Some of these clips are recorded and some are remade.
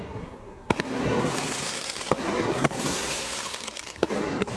remade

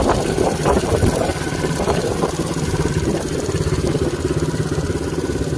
remade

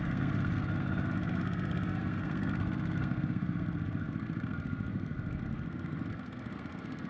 remade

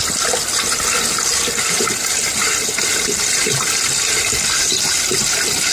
recorded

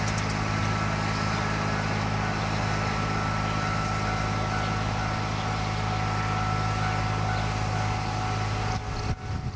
recorded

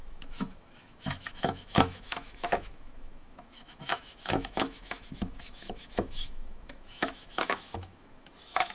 remade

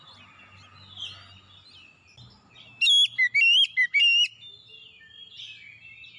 recorded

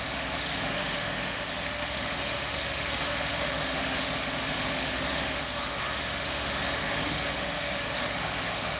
remade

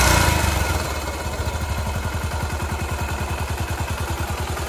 recorded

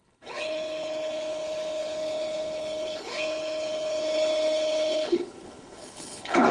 remade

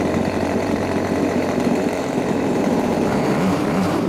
remade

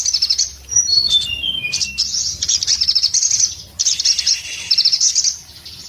recorded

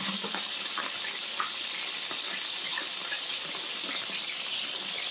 recorded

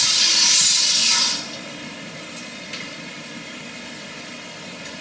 remade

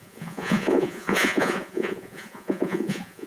remade